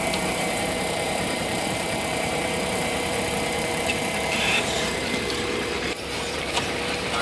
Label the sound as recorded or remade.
remade